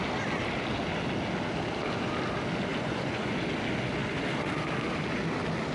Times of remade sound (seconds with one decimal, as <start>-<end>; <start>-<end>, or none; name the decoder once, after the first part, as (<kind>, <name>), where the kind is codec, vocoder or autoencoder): 2.7-3.4 (vocoder, Vocos)